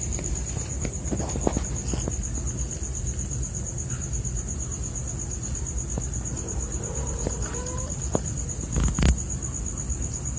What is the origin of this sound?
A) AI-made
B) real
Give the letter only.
B